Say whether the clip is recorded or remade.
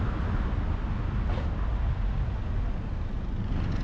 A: recorded